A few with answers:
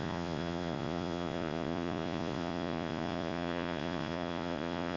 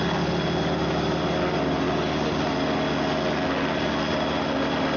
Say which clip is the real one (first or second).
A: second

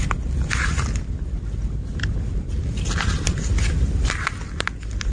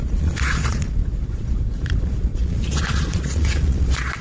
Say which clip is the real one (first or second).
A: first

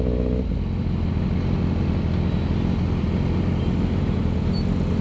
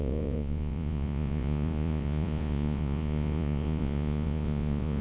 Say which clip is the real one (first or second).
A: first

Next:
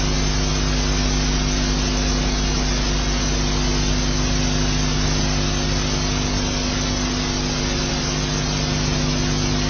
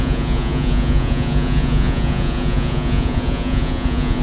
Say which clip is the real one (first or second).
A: first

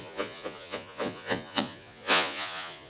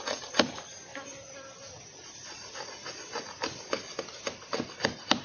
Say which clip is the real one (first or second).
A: second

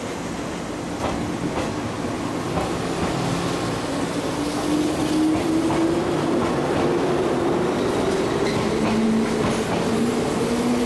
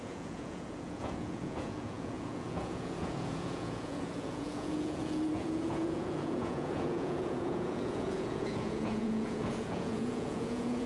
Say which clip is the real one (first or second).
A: first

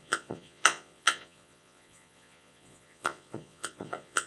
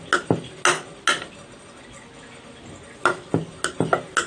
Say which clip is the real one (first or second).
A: second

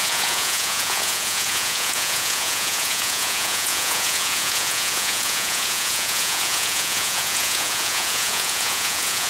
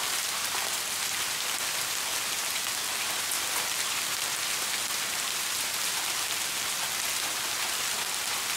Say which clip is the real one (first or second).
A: second